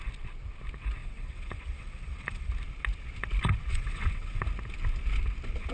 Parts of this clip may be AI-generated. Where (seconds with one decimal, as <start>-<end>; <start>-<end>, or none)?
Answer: 1.0-2.5; 3.7-4.4